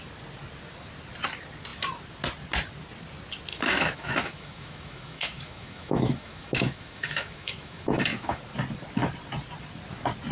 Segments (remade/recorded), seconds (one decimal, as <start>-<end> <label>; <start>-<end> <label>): 0.0-3.5 recorded; 3.5-8.4 remade; 8.4-10.3 recorded